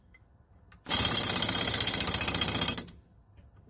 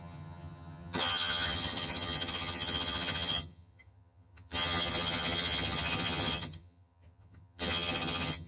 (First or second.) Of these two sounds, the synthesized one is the second